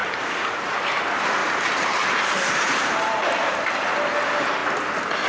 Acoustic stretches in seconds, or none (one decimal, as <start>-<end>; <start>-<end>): 0.8-1.4; 3.6-5.3

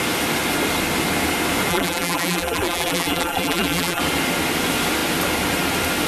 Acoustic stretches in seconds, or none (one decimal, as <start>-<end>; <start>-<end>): 0.0-1.7; 4.0-6.1

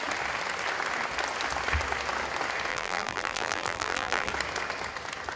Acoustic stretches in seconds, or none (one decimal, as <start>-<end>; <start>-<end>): 0.0-2.7; 4.3-5.4

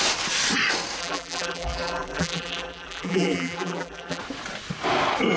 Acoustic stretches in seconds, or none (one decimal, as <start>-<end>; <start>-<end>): 0.0-1.0; 4.2-5.4

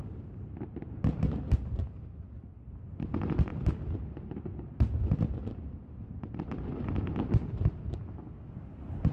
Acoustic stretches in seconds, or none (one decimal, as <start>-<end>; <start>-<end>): 0.0-9.1

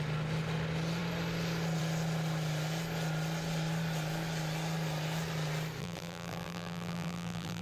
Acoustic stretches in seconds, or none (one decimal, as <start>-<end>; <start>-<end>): 0.0-5.8

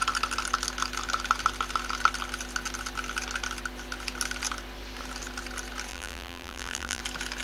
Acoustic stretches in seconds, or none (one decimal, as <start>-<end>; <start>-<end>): 0.0-5.9; 7.0-7.4